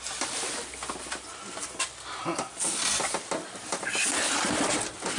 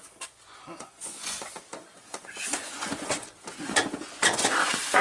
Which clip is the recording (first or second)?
first